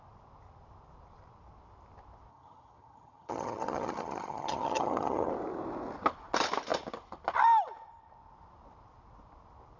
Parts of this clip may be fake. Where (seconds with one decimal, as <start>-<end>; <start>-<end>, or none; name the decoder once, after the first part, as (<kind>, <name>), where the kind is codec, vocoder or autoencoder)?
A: 2.3-5.3 (vocoder, HiFi-GAN)